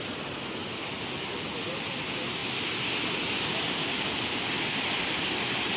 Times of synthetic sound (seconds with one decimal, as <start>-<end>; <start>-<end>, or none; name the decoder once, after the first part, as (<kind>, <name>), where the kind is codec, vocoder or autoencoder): none